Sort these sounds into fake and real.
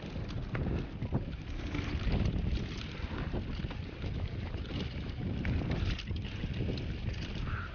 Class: real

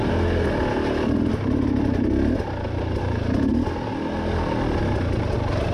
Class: real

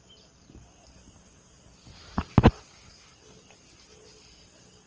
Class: real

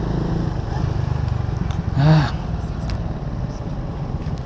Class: real